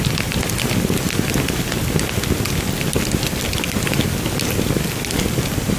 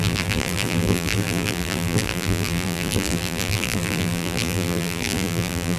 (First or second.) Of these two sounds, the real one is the first